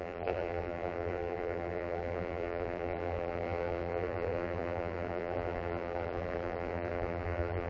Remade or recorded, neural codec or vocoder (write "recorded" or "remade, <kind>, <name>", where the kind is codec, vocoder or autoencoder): remade, vocoder, BigVGAN v2